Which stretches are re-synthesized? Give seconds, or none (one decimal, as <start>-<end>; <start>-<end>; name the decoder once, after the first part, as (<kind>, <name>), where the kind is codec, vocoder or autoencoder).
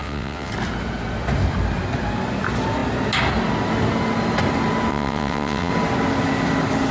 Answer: 0.0-0.5 (vocoder, WaveNeXt); 4.9-5.7